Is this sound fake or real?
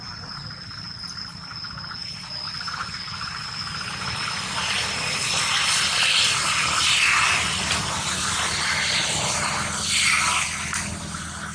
real